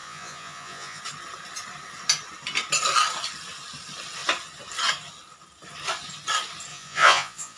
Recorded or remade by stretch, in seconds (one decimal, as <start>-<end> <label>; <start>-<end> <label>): 0.0-1.0 remade; 1.0-6.7 recorded; 6.7-7.6 remade